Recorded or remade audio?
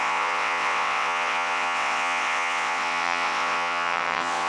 remade